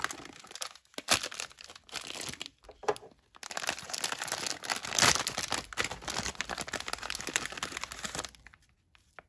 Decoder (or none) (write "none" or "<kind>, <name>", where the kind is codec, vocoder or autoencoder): none